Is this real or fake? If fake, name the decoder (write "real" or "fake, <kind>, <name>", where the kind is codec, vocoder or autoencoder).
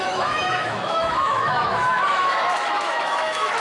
fake, autoencoder, DAC-VAE